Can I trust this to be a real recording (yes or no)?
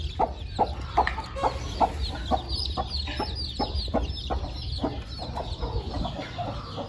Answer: yes